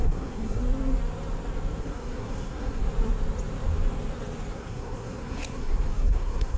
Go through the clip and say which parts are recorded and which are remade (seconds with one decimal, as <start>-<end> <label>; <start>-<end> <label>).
0.0-0.6 remade; 0.6-1.8 recorded; 1.8-2.8 remade; 2.8-4.5 recorded; 4.5-6.6 remade